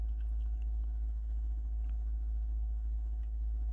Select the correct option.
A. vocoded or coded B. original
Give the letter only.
B